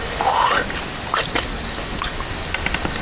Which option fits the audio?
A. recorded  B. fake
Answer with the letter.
A